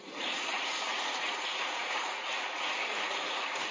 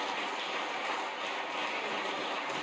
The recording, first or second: second